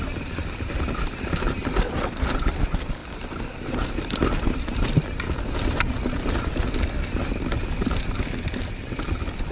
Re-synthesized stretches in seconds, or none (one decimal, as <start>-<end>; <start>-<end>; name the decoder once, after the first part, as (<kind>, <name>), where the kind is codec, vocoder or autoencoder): none